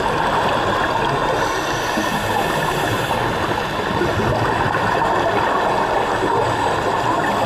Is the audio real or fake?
real